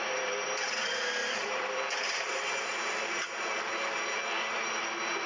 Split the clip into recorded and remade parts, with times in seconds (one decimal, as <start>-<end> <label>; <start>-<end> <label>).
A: 0.0-1.2 recorded; 1.2-3.7 remade; 3.7-5.3 recorded